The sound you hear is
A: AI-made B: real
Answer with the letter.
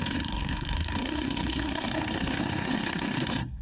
A